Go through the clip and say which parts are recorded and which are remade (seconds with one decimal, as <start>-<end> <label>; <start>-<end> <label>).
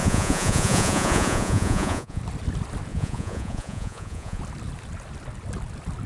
0.0-2.2 remade; 2.2-2.9 recorded; 2.9-4.4 remade; 4.4-6.1 recorded